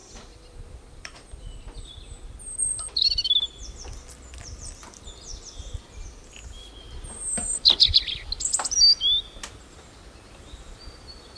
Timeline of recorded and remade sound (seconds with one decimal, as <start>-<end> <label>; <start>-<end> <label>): 0.0-5.3 remade; 5.3-10.3 recorded; 10.3-11.4 remade